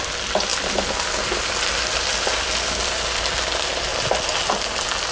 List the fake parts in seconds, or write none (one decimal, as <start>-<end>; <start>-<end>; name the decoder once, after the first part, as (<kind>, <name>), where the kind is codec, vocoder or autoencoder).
none